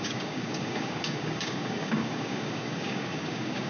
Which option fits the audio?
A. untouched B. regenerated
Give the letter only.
B